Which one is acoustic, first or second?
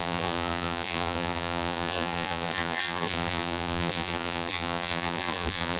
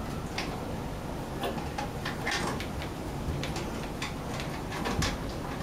second